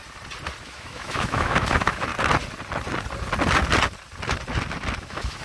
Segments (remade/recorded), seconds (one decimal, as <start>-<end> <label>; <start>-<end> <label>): 0.0-0.6 recorded; 0.6-2.1 remade; 2.1-5.0 recorded; 5.0-5.4 remade